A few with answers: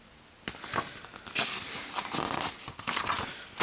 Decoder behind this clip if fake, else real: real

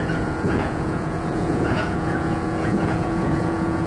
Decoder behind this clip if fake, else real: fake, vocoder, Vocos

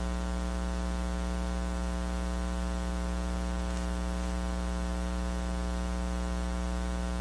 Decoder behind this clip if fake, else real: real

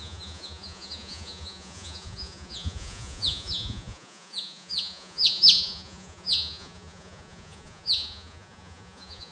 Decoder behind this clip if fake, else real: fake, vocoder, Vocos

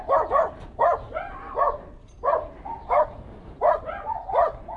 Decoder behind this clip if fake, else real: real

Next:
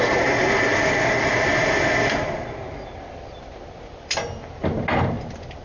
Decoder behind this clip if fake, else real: real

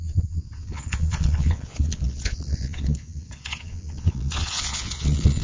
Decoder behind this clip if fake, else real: fake, vocoder, Vocos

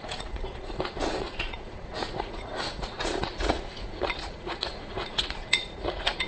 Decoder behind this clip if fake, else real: fake, vocoder, Vocos